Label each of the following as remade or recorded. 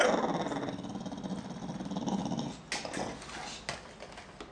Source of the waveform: recorded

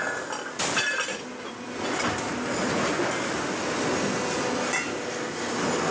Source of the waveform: recorded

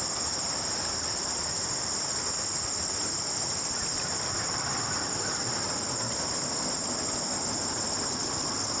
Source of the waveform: recorded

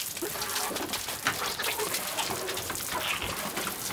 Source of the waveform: recorded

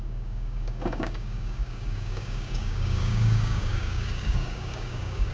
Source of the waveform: remade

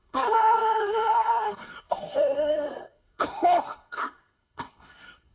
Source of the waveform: remade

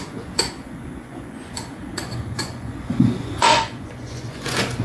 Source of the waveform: remade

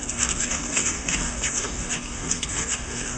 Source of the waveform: remade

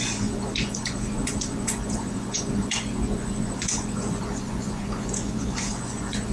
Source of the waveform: remade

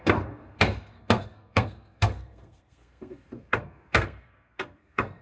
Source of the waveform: remade